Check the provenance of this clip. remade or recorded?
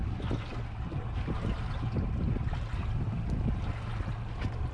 recorded